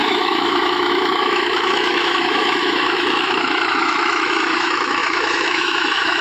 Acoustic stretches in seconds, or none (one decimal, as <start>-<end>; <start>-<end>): none